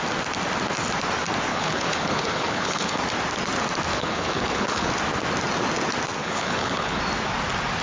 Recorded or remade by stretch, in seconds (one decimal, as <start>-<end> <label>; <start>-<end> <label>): 0.0-1.5 recorded; 1.5-3.0 remade; 3.0-3.9 recorded; 3.9-4.9 remade; 4.9-6.2 recorded; 6.2-7.0 remade; 7.0-7.8 recorded